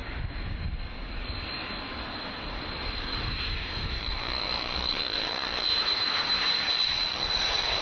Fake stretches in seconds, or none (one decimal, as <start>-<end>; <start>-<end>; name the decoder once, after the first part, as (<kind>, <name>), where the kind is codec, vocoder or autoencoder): 4.0-5.7 (vocoder, Vocos); 6.7-7.8